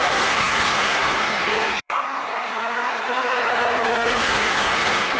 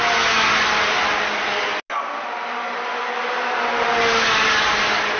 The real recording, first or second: second